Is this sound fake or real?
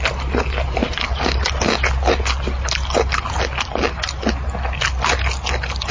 real